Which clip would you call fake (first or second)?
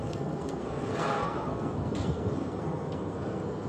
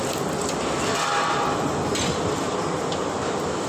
first